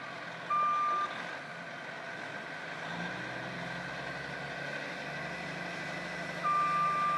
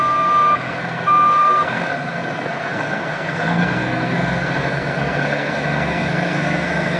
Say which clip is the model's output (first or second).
second